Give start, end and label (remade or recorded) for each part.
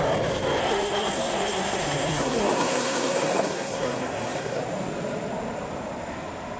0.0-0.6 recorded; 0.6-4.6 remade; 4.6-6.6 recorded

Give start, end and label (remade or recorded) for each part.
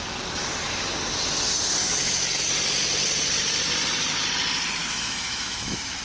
0.0-1.8 recorded; 1.8-2.5 remade; 2.5-4.8 recorded; 4.8-6.0 remade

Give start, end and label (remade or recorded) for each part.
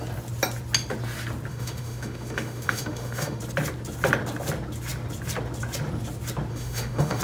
0.0-1.5 recorded; 1.5-3.4 remade; 3.4-6.5 recorded; 6.5-7.2 remade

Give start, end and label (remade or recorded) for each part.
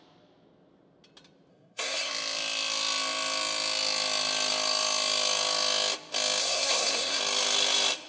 0.0-1.5 recorded; 1.5-2.1 remade; 2.1-6.4 recorded; 6.4-7.2 remade; 7.2-8.1 recorded